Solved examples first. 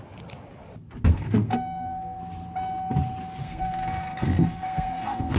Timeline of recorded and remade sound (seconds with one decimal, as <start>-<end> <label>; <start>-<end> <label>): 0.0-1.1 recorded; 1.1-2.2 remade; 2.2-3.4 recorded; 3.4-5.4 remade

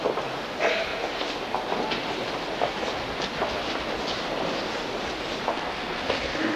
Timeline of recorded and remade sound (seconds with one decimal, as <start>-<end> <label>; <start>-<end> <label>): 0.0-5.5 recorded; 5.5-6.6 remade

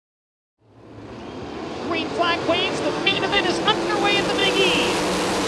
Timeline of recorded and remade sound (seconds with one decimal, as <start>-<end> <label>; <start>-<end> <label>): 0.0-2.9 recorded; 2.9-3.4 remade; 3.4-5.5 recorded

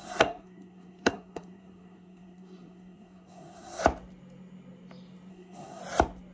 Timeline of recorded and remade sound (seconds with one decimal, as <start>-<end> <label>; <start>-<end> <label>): 0.0-3.8 remade; 3.8-5.3 recorded; 5.3-5.8 remade; 5.8-6.3 recorded